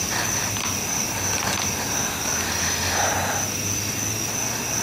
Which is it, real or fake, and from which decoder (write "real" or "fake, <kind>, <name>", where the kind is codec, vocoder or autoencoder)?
real